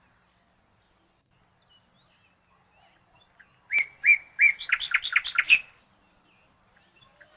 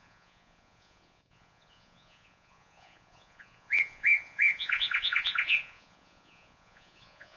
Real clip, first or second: first